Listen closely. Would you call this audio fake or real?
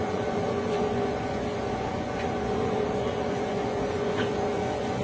fake